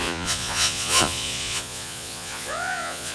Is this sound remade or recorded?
remade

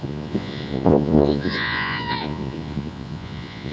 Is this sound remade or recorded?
remade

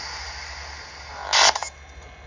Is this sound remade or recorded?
recorded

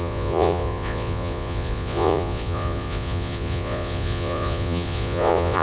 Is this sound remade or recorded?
remade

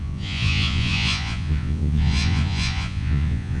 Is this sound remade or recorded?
remade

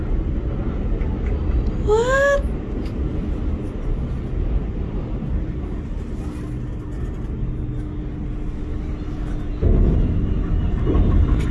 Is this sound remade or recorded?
recorded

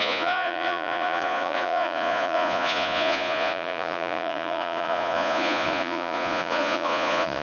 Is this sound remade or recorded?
remade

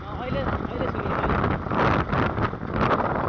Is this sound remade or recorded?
recorded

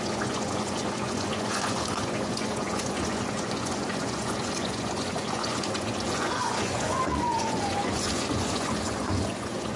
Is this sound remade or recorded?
remade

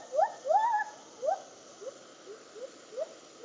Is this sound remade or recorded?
recorded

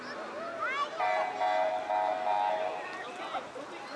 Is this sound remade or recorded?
recorded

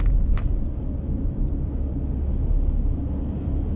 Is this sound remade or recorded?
recorded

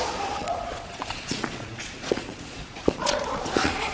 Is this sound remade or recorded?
remade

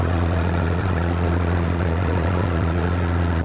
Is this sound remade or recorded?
remade